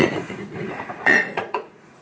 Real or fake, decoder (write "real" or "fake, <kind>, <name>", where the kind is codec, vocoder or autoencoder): fake, vocoder, Vocos